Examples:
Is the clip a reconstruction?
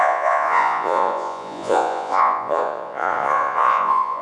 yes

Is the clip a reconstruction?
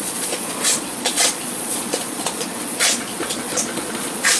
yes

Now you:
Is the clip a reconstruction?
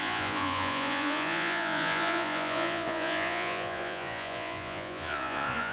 yes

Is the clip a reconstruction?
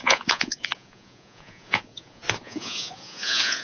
yes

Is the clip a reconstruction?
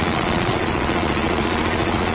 yes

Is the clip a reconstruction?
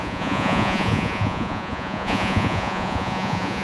yes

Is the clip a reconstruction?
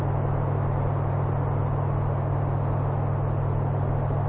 no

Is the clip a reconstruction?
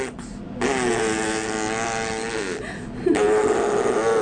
no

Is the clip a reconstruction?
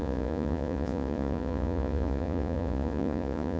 yes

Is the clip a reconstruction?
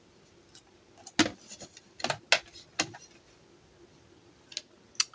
no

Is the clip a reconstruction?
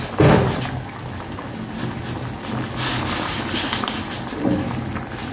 no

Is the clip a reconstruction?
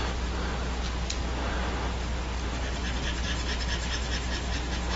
no